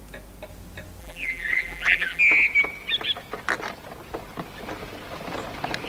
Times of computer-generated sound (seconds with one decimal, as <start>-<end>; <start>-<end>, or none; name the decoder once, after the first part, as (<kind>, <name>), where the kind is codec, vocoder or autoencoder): 1.0-2.2 (vocoder, BigVGAN v2)